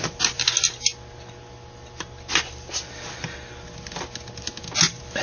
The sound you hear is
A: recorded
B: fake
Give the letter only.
A